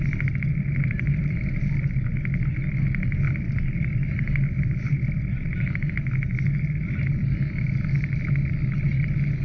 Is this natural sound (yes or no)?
yes